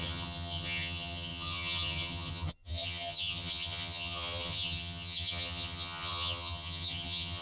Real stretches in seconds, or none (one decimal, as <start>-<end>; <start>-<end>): none